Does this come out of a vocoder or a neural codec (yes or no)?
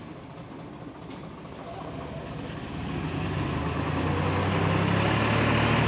no